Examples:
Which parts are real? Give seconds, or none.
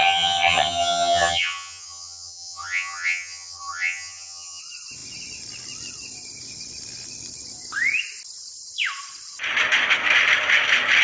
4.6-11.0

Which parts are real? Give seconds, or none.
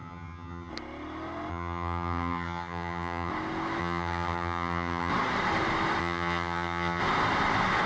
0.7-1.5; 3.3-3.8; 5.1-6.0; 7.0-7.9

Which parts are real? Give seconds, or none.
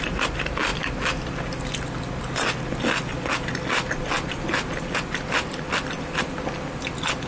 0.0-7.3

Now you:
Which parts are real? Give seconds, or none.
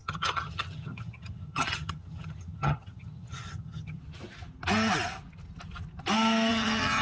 4.0-6.5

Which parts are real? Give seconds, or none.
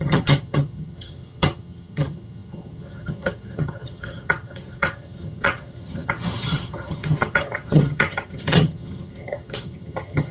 none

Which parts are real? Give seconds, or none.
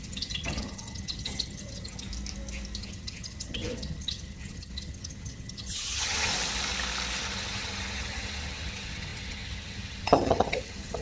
2.1-2.8; 6.3-7.2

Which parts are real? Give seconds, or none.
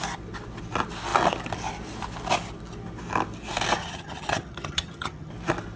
0.0-3.8; 5.3-5.8